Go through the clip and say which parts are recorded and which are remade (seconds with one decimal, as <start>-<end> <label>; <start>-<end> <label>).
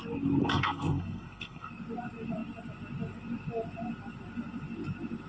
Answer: 0.0-0.4 recorded; 0.4-1.7 remade; 1.7-5.3 recorded